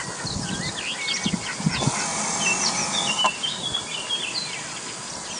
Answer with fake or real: real